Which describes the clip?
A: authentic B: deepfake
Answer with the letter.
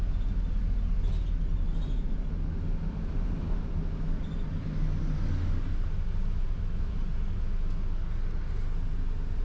A